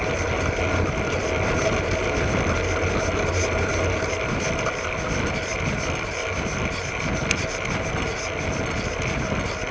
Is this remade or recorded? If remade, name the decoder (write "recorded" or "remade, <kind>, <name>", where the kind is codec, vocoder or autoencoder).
recorded